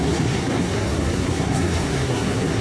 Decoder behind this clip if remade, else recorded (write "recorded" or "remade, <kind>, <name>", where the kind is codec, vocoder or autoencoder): remade, codec, SNAC